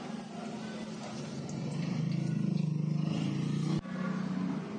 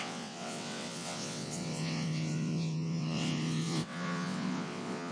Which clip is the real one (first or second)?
first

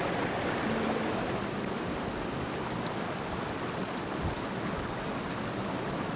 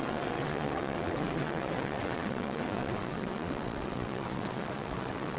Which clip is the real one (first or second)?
first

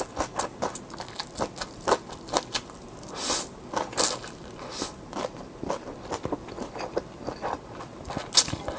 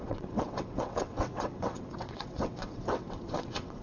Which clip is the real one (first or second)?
first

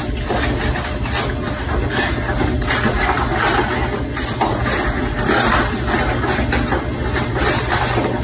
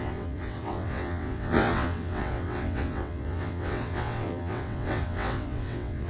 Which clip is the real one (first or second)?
first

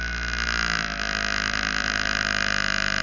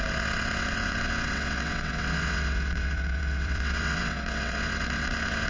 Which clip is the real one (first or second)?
first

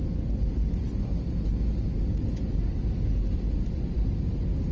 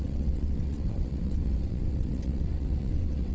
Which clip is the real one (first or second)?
first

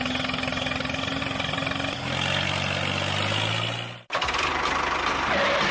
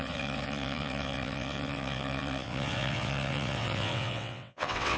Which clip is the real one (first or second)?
first